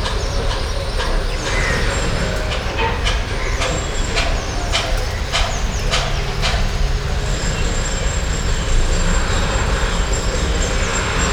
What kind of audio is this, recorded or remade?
recorded